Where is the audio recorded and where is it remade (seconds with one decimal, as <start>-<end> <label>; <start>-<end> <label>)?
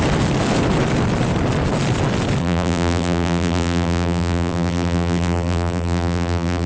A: 0.0-2.4 recorded; 2.4-6.7 remade